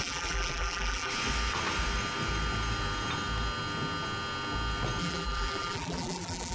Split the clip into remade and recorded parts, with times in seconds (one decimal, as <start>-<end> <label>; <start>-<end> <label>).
0.0-1.1 remade; 1.1-5.0 recorded; 5.0-6.5 remade